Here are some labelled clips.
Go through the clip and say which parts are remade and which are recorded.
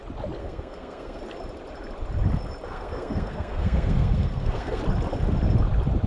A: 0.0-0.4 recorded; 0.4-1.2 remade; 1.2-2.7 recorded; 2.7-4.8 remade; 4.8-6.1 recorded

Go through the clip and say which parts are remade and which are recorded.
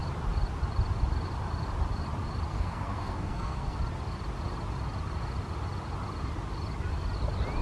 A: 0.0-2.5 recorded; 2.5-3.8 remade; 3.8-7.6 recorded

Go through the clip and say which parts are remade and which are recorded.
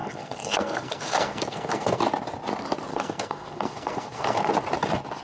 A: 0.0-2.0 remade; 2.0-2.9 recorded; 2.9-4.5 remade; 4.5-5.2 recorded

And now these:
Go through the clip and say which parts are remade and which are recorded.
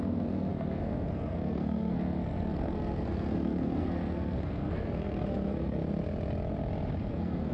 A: 0.0-5.8 remade; 5.8-7.1 recorded; 7.1-7.5 remade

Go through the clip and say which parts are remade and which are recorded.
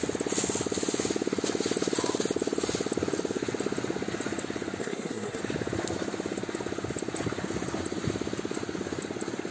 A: 0.0-4.8 recorded; 4.8-5.4 remade; 5.4-9.5 recorded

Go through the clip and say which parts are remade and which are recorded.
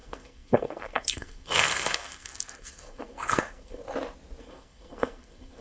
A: 0.0-3.8 remade; 3.8-4.4 recorded; 4.4-5.6 remade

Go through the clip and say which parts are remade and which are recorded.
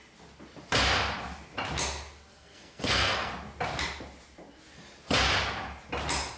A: 0.0-2.3 recorded; 2.3-3.3 remade; 3.3-6.4 recorded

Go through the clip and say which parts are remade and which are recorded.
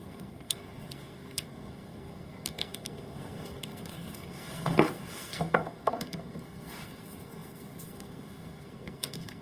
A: 0.0-9.4 remade